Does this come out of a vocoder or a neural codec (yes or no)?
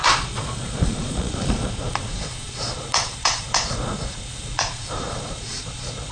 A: yes